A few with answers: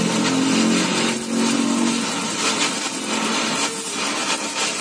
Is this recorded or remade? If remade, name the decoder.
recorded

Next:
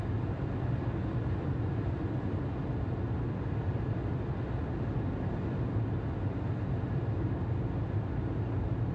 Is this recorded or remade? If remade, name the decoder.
recorded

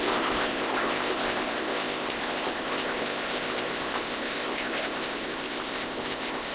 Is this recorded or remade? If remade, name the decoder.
remade, codec, ZipCodec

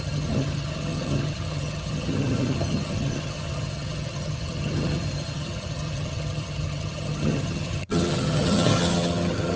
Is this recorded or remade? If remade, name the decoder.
remade, vocoder, HiFi-GAN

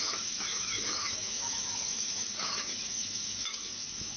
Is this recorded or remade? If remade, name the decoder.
remade, autoencoder, DAC-VAE